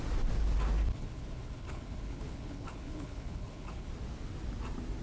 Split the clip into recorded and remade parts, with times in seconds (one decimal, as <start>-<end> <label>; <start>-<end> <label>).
0.0-0.9 recorded; 0.9-3.9 remade; 3.9-5.0 recorded